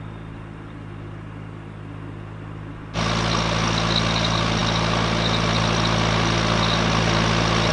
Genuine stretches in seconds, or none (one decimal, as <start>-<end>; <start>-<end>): 0.0-7.7